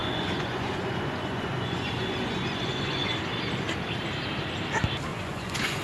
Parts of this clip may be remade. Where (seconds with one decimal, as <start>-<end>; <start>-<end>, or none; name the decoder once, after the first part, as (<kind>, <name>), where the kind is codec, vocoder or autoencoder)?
0.0-3.1 (vocoder, Vocos); 5.1-5.8